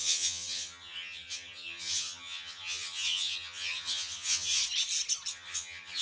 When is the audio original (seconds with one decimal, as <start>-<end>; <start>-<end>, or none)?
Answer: 4.6-5.3